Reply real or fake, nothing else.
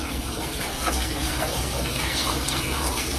fake